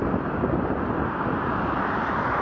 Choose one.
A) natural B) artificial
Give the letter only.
A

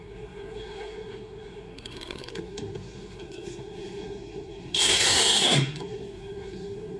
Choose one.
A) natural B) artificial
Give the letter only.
B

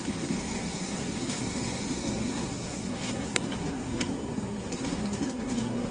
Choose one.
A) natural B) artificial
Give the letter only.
B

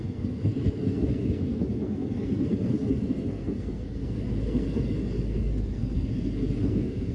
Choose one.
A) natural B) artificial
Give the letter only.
B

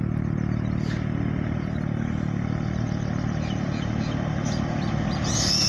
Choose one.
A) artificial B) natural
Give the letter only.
B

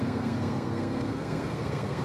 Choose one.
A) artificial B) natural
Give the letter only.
A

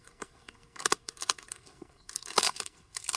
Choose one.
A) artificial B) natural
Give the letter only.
A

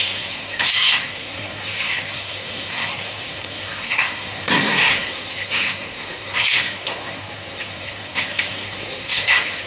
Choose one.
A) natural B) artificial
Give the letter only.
B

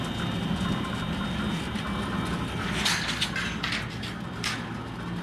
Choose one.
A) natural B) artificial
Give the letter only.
A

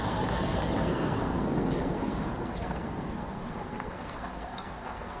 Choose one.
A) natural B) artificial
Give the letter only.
B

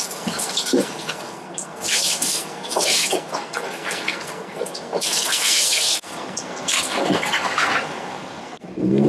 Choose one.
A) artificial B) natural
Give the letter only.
A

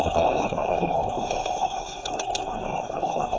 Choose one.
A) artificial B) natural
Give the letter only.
A